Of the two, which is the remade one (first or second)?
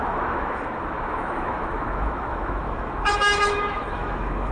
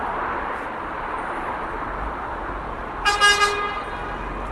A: first